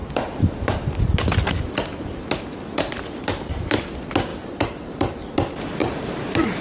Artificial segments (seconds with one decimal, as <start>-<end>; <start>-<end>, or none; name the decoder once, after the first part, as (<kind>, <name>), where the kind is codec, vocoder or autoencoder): 4.3-5.3 (vocoder, BigVGAN v2); 5.8-6.6